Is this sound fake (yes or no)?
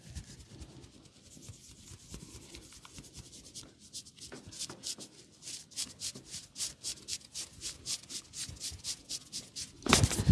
no